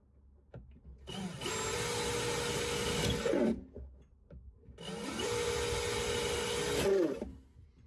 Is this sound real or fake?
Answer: real